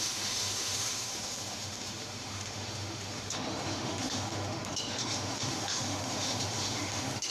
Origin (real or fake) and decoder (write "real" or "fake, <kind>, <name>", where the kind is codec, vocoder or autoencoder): fake, autoencoder, DAC-VAE